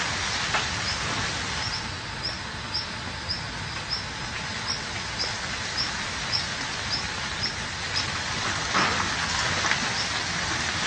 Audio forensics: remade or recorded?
recorded